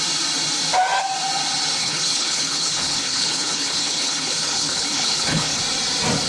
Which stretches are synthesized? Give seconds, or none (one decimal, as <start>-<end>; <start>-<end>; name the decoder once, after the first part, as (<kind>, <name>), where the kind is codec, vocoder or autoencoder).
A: 1.8-5.6 (codec, HILCodec)